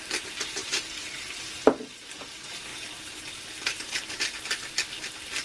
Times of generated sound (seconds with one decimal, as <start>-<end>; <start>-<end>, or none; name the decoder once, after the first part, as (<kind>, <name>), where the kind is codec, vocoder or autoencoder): 0.6-1.5 (vocoder, BigVGAN v2); 2.7-4.2